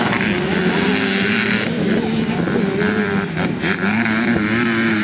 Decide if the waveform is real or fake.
real